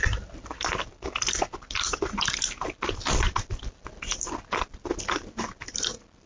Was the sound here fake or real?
real